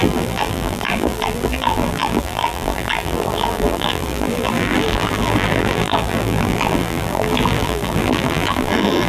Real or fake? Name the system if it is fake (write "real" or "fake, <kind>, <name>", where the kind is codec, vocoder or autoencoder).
fake, vocoder, BigVGAN v2